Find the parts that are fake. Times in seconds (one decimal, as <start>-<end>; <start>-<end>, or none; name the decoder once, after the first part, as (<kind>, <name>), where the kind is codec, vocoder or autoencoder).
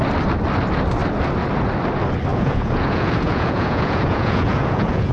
2.3-5.1 (vocoder, Vocos)